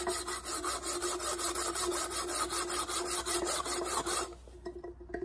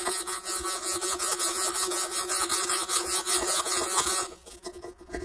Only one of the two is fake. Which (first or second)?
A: second